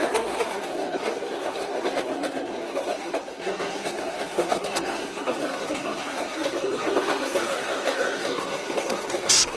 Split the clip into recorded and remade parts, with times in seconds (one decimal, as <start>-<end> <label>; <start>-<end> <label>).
0.0-9.6 remade